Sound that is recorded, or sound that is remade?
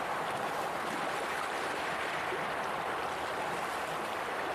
recorded